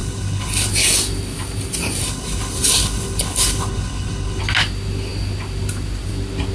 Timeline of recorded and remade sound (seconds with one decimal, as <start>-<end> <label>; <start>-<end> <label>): 0.0-0.7 remade; 0.7-2.0 recorded; 2.0-4.4 remade; 4.4-6.5 recorded